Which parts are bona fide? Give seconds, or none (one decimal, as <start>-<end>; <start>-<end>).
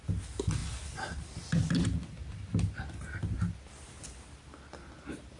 0.0-5.4